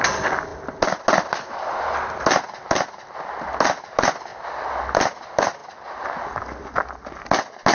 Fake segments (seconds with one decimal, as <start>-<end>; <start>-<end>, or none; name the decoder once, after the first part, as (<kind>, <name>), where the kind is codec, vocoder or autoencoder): 4.3-5.1 (vocoder, BigVGAN v2)